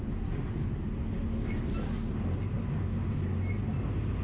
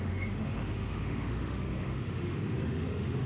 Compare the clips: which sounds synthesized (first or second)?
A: second